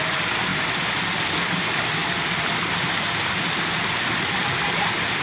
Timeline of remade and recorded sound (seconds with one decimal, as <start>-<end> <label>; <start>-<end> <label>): 0.0-5.2 recorded